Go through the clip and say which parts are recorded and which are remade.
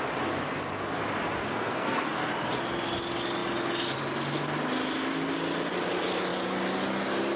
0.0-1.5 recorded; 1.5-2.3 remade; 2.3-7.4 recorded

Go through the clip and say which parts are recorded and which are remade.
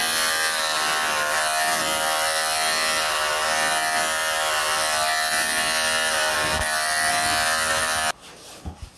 0.0-9.0 recorded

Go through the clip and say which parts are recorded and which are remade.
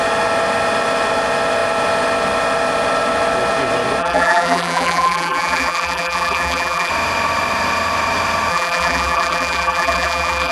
0.0-4.0 recorded; 4.0-6.9 remade; 6.9-8.5 recorded; 8.5-10.5 remade